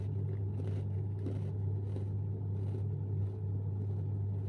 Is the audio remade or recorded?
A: recorded